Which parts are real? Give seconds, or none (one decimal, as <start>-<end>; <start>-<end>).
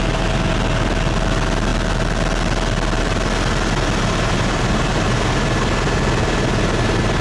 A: 0.0-7.2